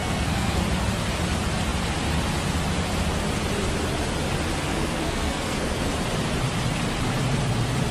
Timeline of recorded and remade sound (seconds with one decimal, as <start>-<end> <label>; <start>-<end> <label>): 0.0-0.6 remade; 0.6-4.7 recorded; 4.7-5.9 remade; 5.9-7.9 recorded